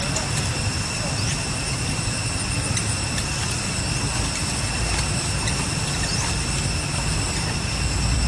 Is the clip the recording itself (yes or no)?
no